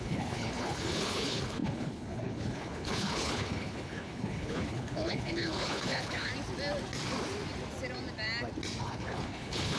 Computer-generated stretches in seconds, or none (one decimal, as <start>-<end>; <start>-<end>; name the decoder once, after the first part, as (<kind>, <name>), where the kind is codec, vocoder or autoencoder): 0.0-6.3 (codec, HILCodec); 8.8-9.8